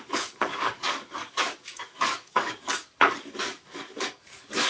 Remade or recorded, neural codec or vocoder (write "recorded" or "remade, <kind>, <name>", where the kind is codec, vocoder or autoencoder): remade, codec, DAC